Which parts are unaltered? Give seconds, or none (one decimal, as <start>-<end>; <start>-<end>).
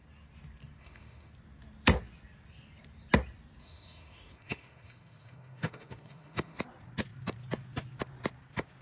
0.0-0.8; 1.3-3.6; 6.6-8.8